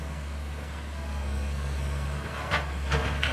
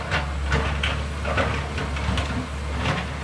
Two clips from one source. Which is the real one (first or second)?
second